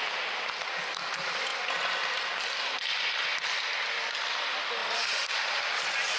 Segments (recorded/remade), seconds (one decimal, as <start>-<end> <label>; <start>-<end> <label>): 0.0-6.2 recorded

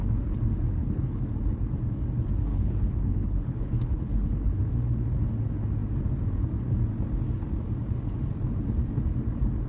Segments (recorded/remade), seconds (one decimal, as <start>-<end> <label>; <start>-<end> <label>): 0.0-0.8 recorded; 0.8-1.3 remade; 1.3-2.5 recorded; 2.5-4.7 remade; 4.7-9.7 recorded

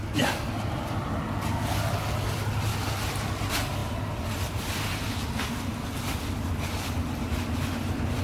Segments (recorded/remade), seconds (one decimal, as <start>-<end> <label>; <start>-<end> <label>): 0.0-8.2 recorded

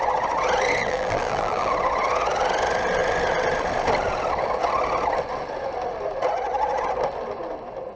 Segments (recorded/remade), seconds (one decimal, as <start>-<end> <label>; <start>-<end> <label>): 0.0-0.8 recorded; 0.8-1.7 remade; 1.7-8.0 recorded